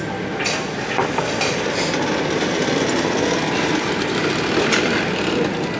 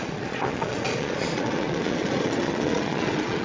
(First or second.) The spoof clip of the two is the second